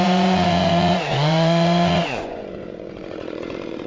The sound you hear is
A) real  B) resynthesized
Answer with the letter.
B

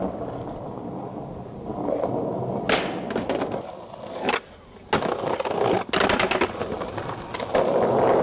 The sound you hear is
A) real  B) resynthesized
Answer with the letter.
A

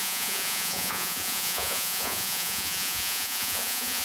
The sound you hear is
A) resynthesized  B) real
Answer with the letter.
A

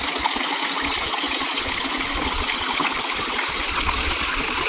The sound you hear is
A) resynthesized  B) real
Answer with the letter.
A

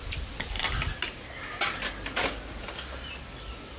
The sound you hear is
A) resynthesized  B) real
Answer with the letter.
B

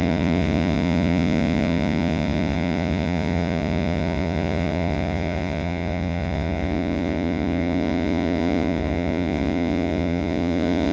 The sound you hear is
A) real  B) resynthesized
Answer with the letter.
B